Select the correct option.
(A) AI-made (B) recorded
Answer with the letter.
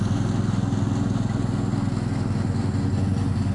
B